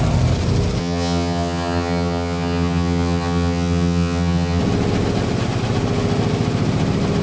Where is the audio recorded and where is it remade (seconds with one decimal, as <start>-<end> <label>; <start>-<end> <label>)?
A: 0.0-0.8 recorded; 0.8-4.6 remade; 4.6-7.2 recorded